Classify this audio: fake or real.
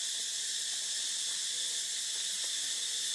real